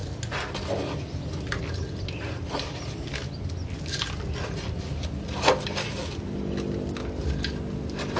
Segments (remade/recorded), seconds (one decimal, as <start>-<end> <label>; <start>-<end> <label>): 0.0-8.2 recorded

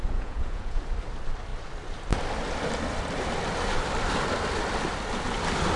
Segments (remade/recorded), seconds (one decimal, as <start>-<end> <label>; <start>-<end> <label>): 0.0-0.8 remade; 0.8-5.8 recorded

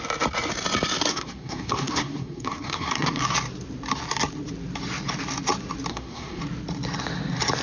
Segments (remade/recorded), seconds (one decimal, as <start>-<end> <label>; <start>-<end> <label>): 0.0-1.1 recorded; 1.1-3.2 remade; 3.2-5.9 recorded; 5.9-6.4 remade; 6.4-7.6 recorded

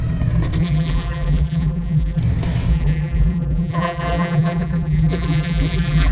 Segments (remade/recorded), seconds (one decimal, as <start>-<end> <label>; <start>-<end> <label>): 0.0-0.6 recorded; 0.6-2.2 remade; 2.2-2.7 recorded; 2.7-6.1 remade

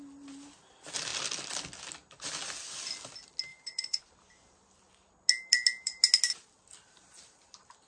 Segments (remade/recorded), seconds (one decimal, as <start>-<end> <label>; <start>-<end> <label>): 0.0-3.5 recorded; 3.5-4.0 remade; 4.0-7.9 recorded